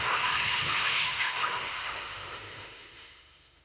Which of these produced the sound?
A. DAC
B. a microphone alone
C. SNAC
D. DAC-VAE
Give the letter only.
D